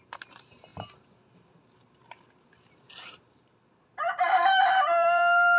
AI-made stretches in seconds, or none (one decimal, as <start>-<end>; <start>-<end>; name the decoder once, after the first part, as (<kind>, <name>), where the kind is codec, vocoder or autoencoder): 0.0-5.6 (vocoder, BigVGAN v2)